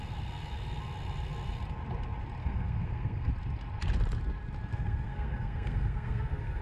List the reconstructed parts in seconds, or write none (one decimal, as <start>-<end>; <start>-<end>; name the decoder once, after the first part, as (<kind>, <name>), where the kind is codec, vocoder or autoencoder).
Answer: 2.4-3.3 (codec, SNAC); 4.7-6.6